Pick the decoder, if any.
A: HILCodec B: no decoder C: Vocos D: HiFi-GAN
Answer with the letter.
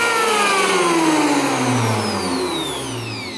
B